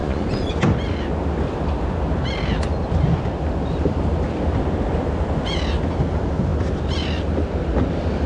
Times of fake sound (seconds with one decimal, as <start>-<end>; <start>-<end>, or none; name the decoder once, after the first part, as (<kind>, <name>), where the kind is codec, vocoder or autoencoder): 0.0-0.5 (vocoder, Vocos)

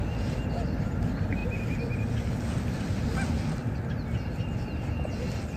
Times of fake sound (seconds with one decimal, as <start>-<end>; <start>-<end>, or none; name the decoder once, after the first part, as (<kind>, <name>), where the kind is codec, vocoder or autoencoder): none

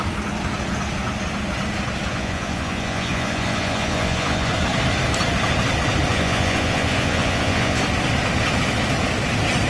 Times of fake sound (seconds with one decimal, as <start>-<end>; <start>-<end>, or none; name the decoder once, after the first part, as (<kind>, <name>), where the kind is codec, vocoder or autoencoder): 2.1-4.5 (vocoder, Vocos); 6.1-7.8

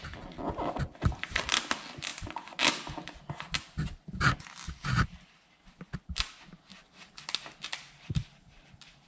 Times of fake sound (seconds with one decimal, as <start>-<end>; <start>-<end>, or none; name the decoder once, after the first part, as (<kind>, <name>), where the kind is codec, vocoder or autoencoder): none

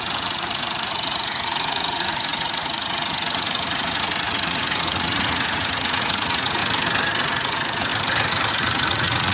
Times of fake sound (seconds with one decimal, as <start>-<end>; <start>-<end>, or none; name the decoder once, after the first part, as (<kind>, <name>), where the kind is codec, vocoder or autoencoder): 0.0-6.6 (vocoder, Vocos); 7.2-7.9; 8.5-9.3

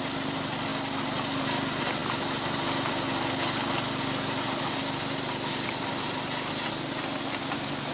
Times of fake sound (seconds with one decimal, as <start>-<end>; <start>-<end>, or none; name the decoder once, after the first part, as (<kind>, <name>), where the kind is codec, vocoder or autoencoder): none